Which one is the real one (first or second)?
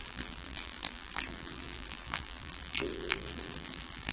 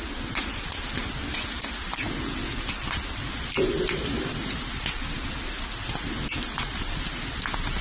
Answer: second